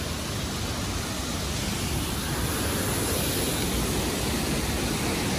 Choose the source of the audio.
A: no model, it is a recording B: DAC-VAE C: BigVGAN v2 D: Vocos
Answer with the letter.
A